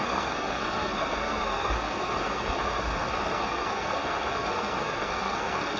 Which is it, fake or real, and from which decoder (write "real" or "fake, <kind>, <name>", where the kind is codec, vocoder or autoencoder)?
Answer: fake, codec, SNAC